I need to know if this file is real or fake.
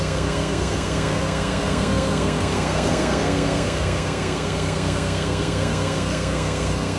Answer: fake